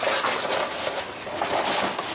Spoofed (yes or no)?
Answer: no